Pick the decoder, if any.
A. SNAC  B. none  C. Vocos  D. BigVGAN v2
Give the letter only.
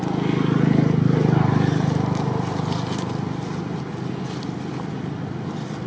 B